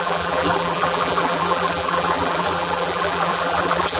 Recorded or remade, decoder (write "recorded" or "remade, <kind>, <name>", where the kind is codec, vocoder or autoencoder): remade, vocoder, BigVGAN v2